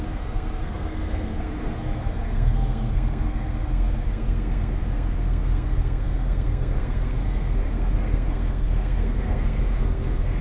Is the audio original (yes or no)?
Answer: no